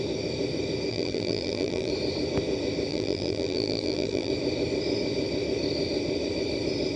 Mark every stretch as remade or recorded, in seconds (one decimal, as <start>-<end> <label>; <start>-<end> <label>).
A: 0.0-0.9 recorded; 0.9-1.9 remade; 1.9-2.9 recorded; 2.9-4.3 remade; 4.3-7.0 recorded